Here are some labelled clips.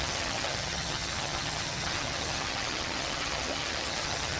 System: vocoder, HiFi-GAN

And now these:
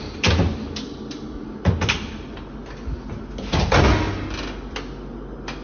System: none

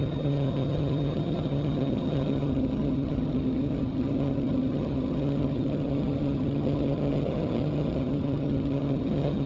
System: vocoder, HiFi-GAN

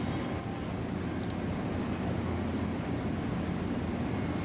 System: none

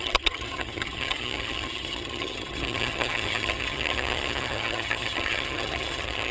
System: vocoder, HiFi-GAN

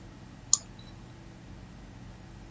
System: none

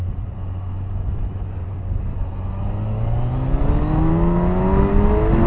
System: none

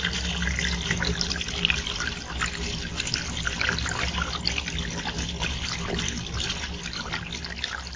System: none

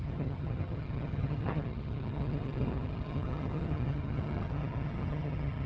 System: vocoder, HiFi-GAN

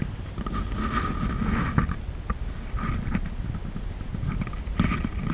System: none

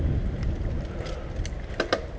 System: none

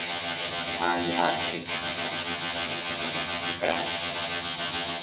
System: vocoder, HiFi-GAN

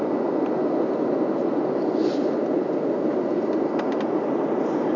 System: none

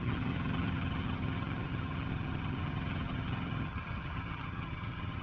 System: vocoder, HiFi-GAN